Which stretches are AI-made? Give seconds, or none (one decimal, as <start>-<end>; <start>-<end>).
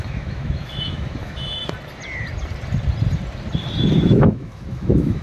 0.0-1.6; 4.0-5.2